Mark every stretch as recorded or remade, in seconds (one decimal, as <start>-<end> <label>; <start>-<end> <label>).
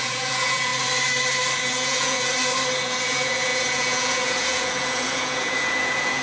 0.0-0.7 remade; 0.7-1.6 recorded; 1.6-2.3 remade; 2.3-2.8 recorded; 2.8-6.2 remade